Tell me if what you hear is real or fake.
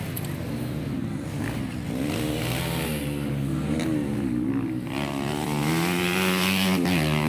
real